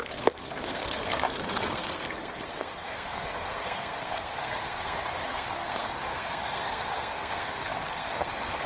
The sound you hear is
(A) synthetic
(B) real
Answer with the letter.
A